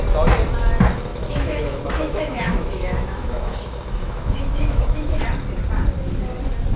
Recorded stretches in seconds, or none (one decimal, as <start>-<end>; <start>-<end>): 0.0-1.1; 5.2-6.8